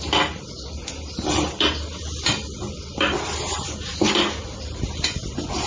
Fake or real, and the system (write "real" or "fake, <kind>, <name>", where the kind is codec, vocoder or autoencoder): real